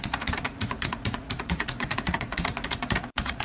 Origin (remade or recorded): remade